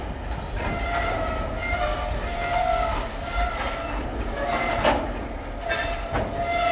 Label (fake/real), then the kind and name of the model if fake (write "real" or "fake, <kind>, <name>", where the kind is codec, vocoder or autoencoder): real